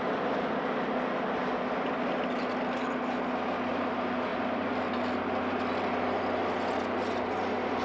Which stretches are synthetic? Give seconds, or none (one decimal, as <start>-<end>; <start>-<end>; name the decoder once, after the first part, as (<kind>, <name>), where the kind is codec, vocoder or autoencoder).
4.3-5.0 (vocoder, BigVGAN v2)